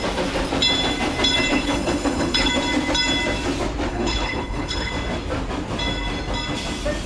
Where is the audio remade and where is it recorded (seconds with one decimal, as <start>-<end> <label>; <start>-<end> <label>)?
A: 0.0-1.5 recorded; 1.5-2.5 remade; 2.5-3.9 recorded; 3.9-4.9 remade; 4.9-7.1 recorded